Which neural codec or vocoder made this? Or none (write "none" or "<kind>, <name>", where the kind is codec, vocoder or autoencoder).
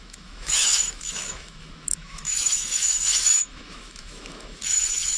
autoencoder, DAC-VAE